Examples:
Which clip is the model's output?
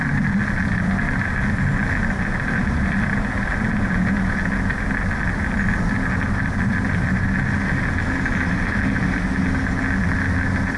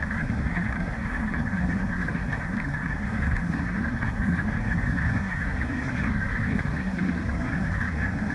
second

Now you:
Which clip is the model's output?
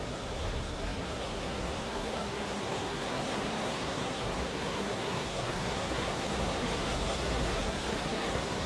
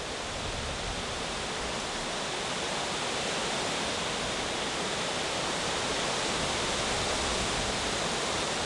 first